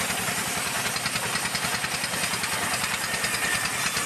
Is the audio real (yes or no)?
yes